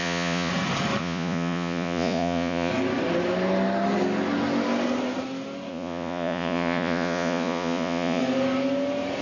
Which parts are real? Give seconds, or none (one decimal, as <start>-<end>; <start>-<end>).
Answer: 0.5-1.0; 2.7-5.7; 8.2-9.2